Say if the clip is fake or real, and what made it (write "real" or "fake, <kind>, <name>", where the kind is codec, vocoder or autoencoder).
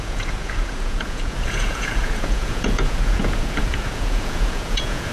fake, vocoder, Vocos